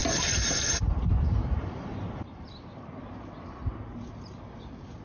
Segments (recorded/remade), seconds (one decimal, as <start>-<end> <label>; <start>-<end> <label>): 0.0-3.0 remade; 3.0-5.0 recorded